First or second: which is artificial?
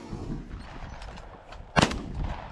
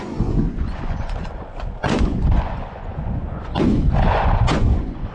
second